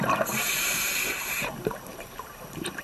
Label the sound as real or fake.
fake